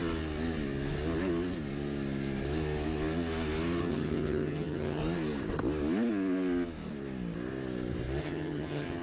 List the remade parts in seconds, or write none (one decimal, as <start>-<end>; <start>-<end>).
3.8-5.0; 8.2-9.0